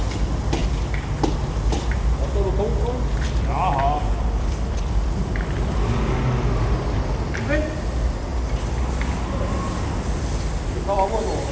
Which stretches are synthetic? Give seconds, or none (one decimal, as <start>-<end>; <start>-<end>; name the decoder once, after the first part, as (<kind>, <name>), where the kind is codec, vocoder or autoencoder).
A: none

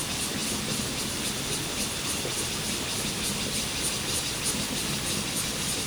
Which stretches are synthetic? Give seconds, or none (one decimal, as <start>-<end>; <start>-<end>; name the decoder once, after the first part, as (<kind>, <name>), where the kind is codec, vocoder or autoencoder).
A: none